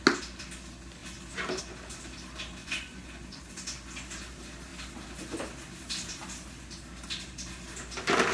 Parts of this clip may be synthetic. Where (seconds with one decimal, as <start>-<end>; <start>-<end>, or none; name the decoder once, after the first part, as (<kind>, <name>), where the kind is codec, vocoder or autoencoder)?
2.6-3.4 (vocoder, Vocos)